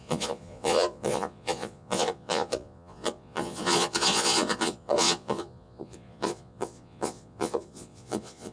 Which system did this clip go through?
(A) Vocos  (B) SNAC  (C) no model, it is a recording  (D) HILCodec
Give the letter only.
A